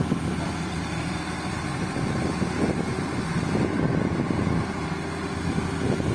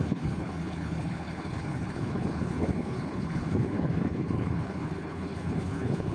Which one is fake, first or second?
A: second